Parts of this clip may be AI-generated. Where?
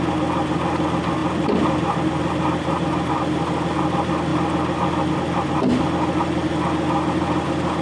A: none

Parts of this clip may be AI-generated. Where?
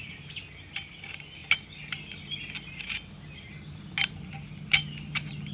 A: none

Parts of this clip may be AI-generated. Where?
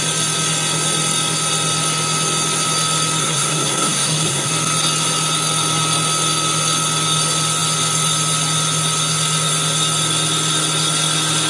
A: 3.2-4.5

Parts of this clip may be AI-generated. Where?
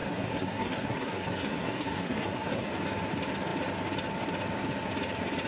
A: 0.0-2.7